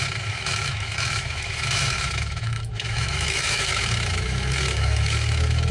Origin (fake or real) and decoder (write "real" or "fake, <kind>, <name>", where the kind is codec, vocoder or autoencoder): fake, autoencoder, DAC-VAE